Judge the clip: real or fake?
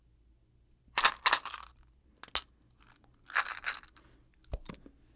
real